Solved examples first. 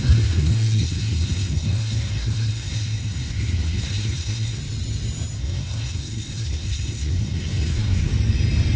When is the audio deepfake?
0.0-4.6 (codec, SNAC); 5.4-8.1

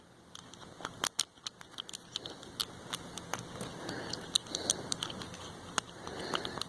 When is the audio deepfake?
none

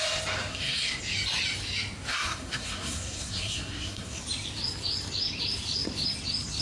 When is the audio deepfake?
0.5-1.0 (codec, SNAC); 2.1-4.2

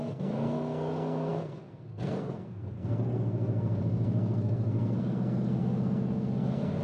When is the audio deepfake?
0.0-6.8 (codec, SNAC)

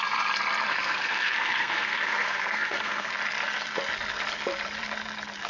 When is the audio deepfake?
0.7-3.1 (codec, SNAC)

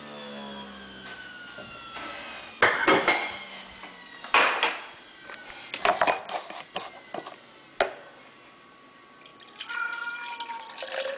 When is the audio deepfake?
none

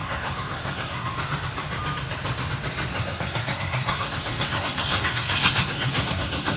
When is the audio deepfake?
0.0-1.1 (codec, SNAC); 2.9-6.6

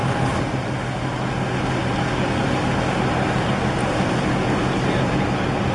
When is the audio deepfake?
none